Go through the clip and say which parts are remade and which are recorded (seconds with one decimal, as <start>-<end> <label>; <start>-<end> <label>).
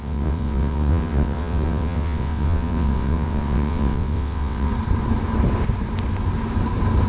0.0-4.7 remade; 4.7-7.1 recorded